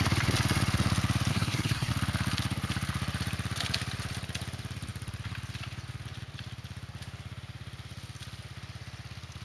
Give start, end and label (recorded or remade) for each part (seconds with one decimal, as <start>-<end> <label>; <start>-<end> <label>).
0.0-1.3 recorded; 1.3-1.9 remade; 1.9-9.4 recorded